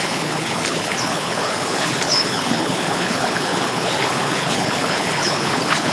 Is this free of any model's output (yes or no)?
no